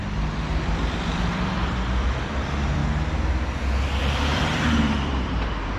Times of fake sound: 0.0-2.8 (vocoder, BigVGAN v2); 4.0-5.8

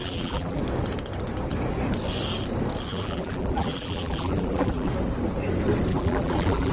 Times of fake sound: 0.0-0.6 (vocoder, BigVGAN v2); 2.9-4.9; 5.9-6.7

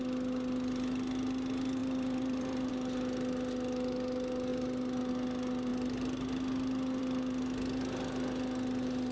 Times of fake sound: 1.8-2.7 (vocoder, BigVGAN v2)

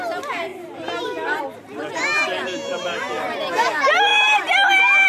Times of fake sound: 0.5-1.4 (vocoder, BigVGAN v2); 2.7-3.5; 4.1-5.1